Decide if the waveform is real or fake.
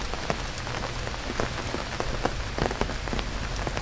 real